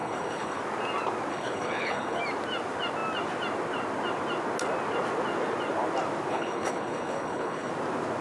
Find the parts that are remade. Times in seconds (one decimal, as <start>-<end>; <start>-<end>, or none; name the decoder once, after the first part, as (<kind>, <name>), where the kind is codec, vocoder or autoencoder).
0.0-0.6 (codec, HILCodec); 1.3-2.2; 6.3-7.7